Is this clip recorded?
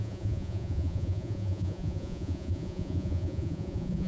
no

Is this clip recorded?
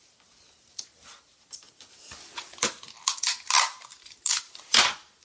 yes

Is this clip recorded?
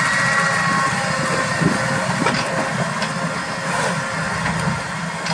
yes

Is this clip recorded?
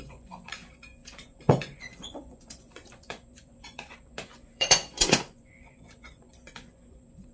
no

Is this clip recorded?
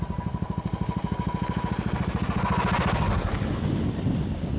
yes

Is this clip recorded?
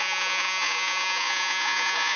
no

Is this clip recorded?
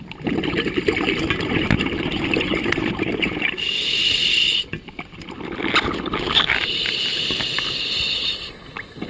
yes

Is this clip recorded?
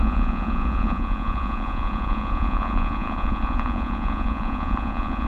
no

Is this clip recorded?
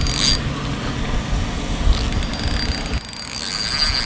yes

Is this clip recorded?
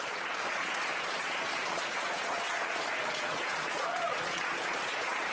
no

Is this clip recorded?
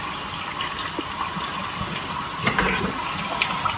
yes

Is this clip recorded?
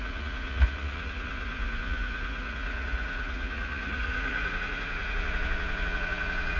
no